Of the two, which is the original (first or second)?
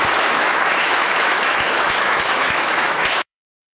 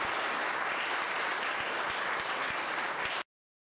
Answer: second